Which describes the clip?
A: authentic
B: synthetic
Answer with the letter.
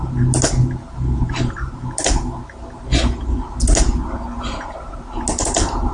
A